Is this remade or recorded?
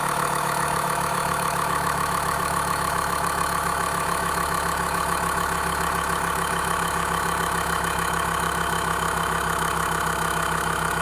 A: remade